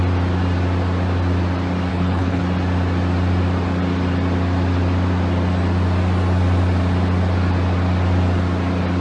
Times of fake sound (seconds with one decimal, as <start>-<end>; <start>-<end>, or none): 1.9-2.4